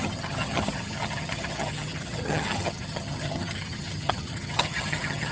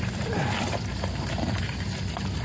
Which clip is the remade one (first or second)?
first